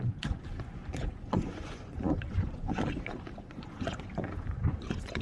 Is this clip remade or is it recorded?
remade